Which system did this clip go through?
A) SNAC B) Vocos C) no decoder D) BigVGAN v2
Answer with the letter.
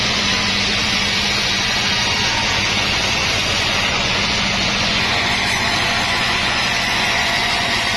B